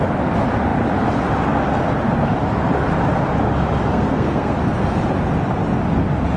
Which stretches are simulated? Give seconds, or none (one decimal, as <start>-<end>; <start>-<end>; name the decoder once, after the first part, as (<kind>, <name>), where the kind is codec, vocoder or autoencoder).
3.9-4.6 (codec, SNAC)